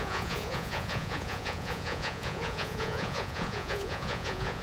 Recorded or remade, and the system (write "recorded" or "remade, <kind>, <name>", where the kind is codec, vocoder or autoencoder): remade, vocoder, Vocos